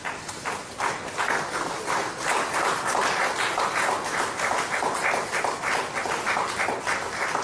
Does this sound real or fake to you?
real